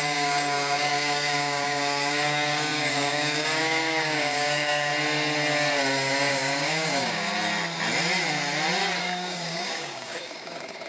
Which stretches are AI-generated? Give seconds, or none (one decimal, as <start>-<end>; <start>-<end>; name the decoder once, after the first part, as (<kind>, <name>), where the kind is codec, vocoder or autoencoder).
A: 0.0-4.9 (codec, DAC); 6.3-7.3; 9.0-10.9